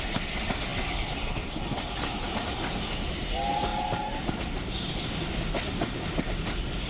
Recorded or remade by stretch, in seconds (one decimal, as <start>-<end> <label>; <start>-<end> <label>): 0.0-3.7 recorded; 3.7-4.9 remade; 4.9-6.9 recorded